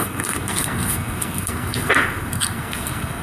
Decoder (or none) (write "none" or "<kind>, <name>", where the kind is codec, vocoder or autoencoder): codec, SNAC